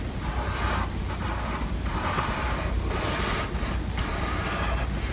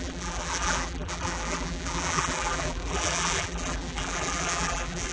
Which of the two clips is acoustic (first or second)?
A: first